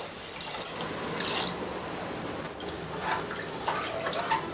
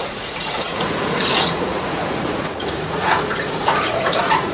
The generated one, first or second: second